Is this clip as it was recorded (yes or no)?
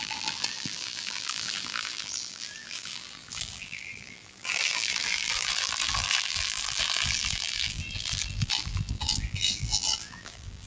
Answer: no